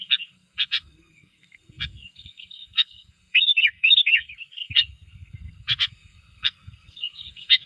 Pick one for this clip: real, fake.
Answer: fake